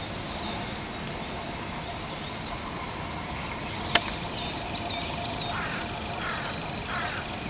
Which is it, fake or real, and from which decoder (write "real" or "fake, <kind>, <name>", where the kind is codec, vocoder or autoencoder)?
real